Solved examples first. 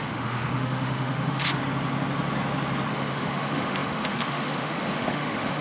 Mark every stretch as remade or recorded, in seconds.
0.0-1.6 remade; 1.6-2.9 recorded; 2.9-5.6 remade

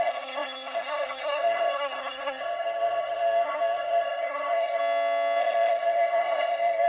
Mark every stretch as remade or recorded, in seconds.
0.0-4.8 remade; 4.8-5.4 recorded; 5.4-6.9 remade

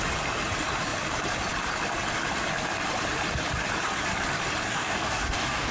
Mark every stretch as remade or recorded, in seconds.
0.0-4.7 recorded; 4.7-5.7 remade

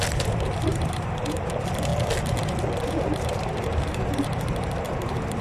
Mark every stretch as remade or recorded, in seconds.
0.0-1.9 remade; 1.9-2.8 recorded; 2.8-5.4 remade

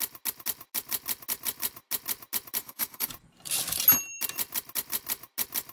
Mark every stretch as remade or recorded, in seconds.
0.0-2.6 recorded; 2.6-3.1 remade; 3.1-5.7 recorded

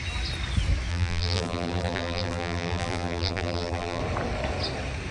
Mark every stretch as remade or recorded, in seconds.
0.0-0.9 recorded; 0.9-4.0 remade; 4.0-5.1 recorded